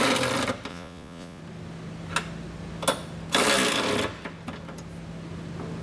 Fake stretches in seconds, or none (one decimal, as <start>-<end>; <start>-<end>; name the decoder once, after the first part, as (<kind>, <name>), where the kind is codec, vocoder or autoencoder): 0.7-1.4 (vocoder, Vocos)